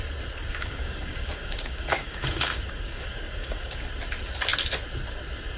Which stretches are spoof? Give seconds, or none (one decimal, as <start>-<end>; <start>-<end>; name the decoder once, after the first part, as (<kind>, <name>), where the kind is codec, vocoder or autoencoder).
0.5-3.9 (codec, DAC)